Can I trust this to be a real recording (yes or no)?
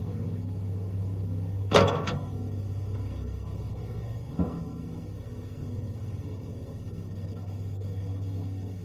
no